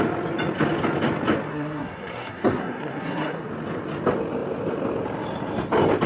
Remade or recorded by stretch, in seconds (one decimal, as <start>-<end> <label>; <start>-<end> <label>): 0.0-1.5 recorded; 1.5-3.5 remade; 3.5-6.1 recorded